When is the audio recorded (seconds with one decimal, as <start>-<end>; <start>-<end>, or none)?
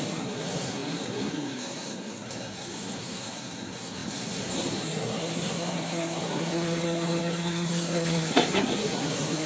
none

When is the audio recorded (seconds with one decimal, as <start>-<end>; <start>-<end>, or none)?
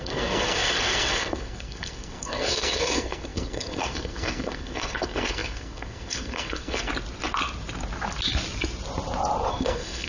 6.9-9.5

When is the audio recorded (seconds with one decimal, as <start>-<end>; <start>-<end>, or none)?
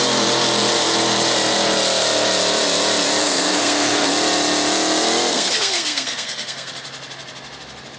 0.0-3.2; 4.1-5.3; 6.7-8.0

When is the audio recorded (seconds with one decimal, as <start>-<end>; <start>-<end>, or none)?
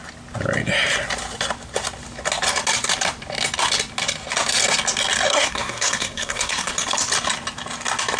0.0-5.3; 6.7-8.2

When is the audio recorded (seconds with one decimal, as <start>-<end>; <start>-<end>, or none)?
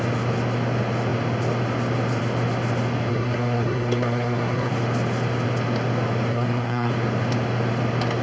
0.0-3.1; 4.7-6.3; 6.9-8.2